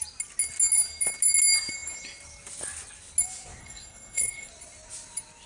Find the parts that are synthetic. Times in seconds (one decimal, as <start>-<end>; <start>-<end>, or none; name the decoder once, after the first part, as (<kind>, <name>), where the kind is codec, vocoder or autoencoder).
3.6-4.5 (codec, SNAC)